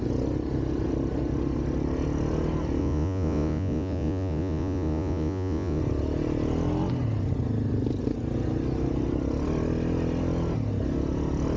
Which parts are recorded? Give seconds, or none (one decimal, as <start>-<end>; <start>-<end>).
0.0-2.8; 5.8-11.6